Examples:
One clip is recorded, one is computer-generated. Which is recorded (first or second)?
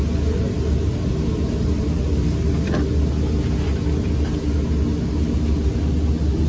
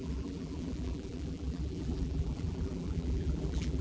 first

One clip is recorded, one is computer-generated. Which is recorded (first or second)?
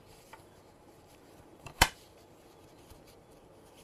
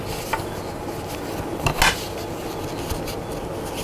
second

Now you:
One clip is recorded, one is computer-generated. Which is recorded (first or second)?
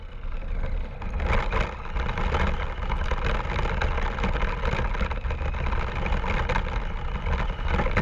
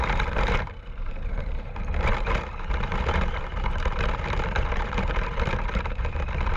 first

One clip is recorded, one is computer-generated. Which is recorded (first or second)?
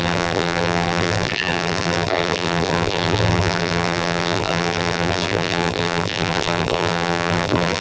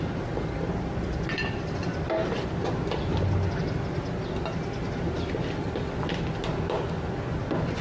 second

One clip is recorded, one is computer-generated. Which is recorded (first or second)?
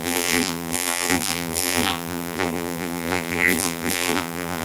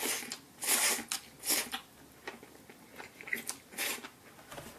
second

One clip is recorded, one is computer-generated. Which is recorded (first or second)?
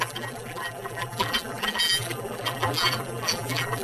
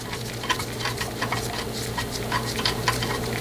second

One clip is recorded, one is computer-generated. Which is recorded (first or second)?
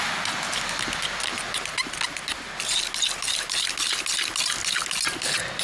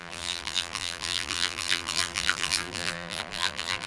first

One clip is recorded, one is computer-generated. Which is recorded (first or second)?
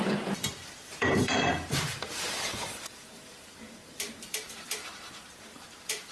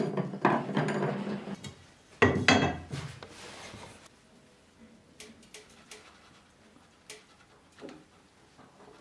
second